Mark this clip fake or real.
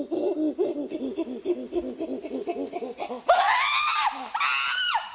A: real